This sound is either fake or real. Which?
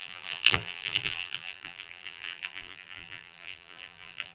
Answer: fake